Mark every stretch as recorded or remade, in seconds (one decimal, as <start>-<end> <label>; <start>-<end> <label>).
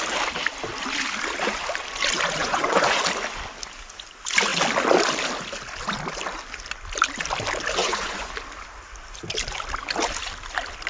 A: 0.0-2.4 recorded; 2.4-3.0 remade; 3.0-7.8 recorded; 7.8-8.3 remade; 8.3-10.9 recorded